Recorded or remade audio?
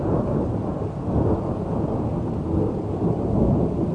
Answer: recorded